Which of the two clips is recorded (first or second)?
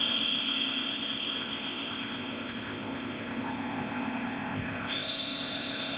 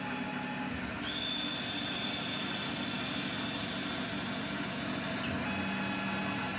second